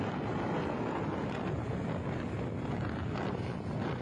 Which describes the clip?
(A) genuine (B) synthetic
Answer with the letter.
A